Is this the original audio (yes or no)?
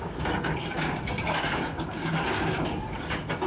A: no